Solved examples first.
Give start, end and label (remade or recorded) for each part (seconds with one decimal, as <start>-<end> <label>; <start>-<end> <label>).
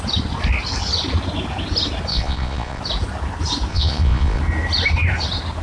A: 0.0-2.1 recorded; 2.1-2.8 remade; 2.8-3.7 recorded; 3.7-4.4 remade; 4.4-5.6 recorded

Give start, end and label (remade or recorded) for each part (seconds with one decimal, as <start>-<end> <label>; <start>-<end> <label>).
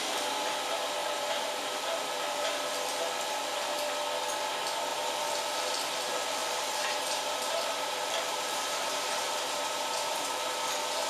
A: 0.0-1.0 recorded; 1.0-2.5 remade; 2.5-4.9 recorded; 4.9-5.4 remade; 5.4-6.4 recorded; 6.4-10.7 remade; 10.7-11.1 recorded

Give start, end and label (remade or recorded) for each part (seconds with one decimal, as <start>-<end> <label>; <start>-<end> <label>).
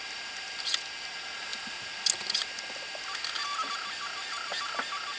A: 0.0-5.2 recorded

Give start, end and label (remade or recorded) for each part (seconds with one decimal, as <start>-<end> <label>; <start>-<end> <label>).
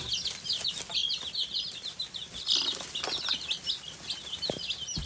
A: 0.0-5.1 recorded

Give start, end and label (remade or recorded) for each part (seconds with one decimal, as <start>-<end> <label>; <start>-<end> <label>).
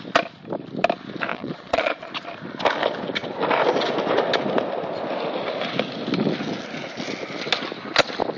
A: 0.0-1.3 recorded; 1.3-2.1 remade; 2.1-8.4 recorded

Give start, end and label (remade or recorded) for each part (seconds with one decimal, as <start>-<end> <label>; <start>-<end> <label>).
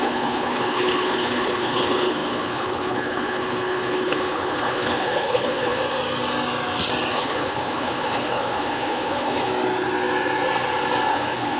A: 0.0-5.8 remade; 5.8-7.1 recorded; 7.1-9.5 remade; 9.5-11.1 recorded; 11.1-11.6 remade